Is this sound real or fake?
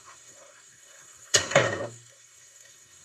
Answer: fake